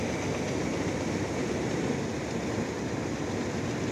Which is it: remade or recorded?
recorded